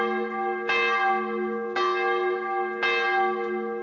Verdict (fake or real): real